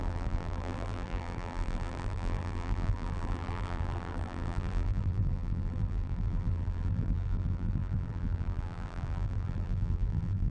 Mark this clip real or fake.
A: fake